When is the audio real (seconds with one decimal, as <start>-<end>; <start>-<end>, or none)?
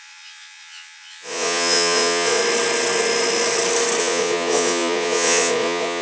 2.4-4.0